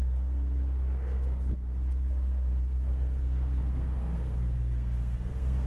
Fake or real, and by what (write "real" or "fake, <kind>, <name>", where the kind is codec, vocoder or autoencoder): fake, codec, SNAC